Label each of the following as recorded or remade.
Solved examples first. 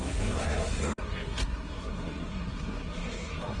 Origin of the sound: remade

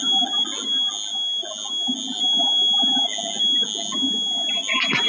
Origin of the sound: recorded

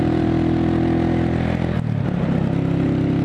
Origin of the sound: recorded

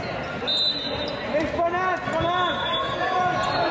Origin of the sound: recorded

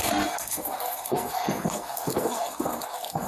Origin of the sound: remade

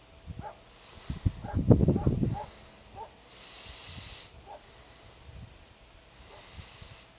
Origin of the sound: recorded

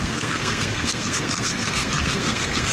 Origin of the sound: remade